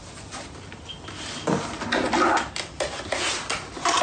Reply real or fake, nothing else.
real